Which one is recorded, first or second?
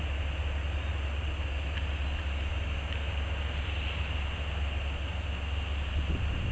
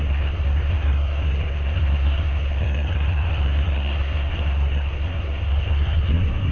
first